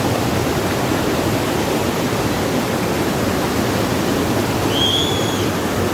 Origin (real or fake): real